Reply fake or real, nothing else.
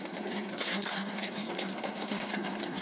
fake